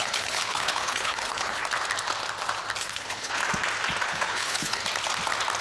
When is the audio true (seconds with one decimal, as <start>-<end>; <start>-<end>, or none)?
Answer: 1.6-2.8; 3.4-4.0; 4.8-5.6